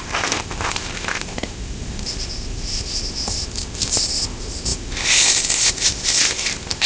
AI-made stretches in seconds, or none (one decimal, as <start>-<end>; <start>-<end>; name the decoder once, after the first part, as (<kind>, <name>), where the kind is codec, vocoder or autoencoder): 0.0-6.9 (codec, ZipCodec)